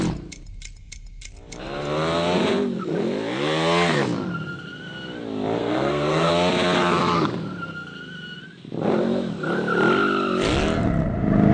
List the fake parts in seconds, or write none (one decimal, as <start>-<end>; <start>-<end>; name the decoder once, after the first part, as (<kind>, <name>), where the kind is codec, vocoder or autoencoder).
5.6-6.3 (codec, SNAC)